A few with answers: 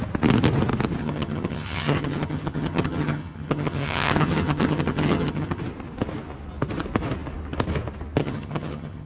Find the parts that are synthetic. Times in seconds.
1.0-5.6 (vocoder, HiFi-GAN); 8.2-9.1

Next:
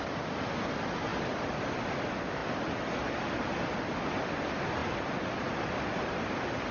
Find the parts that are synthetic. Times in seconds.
none

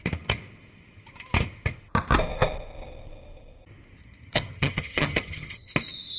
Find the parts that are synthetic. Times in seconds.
4.0-5.7 (vocoder, HiFi-GAN)

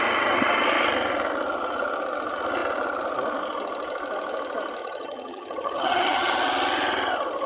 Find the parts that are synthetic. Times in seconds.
4.8-6.4 (vocoder, HiFi-GAN)

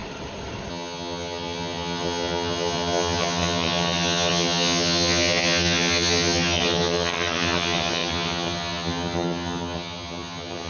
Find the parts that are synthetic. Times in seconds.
0.7-10.7 (vocoder, HiFi-GAN)

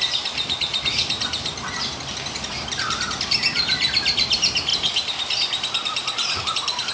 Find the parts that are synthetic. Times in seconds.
none

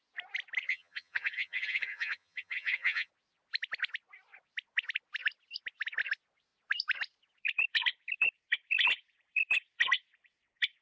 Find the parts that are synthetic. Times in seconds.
0.7-3.1 (vocoder, HiFi-GAN)

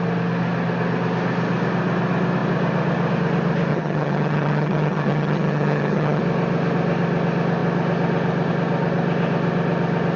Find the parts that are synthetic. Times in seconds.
3.7-6.2 (vocoder, HiFi-GAN)